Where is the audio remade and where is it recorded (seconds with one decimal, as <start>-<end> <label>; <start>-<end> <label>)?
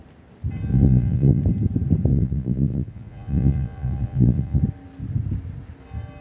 0.0-0.7 recorded; 0.7-1.4 remade; 1.4-2.1 recorded; 2.1-4.6 remade; 4.6-6.2 recorded